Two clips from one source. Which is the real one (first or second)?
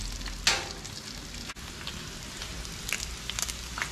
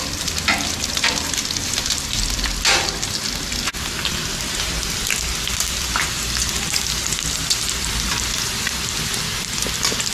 first